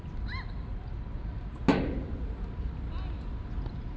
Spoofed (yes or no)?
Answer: no